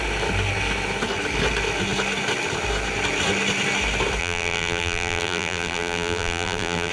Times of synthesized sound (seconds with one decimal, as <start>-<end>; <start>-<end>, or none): 4.2-6.9